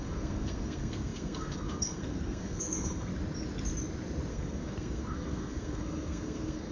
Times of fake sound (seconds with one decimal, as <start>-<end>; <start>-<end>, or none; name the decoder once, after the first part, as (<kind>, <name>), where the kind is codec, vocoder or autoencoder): 0.0-3.1 (codec, SNAC); 4.3-6.7